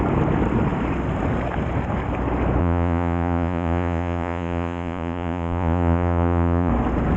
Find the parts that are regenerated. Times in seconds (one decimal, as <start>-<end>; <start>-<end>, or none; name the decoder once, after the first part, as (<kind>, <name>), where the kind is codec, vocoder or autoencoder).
2.6-6.7 (vocoder, Vocos)